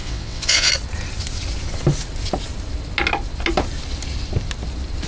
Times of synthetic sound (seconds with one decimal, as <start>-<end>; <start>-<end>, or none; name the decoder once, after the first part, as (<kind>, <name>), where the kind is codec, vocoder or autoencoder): 0.0-0.7 (vocoder, WaveNeXt)